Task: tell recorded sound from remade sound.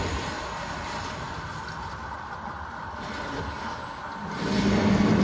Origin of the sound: recorded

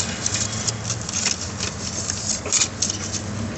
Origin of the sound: recorded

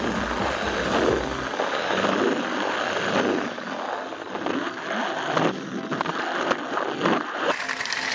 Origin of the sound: recorded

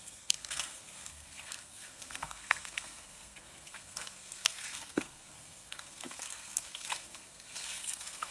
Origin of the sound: remade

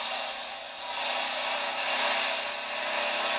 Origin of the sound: recorded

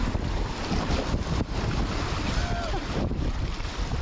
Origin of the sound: recorded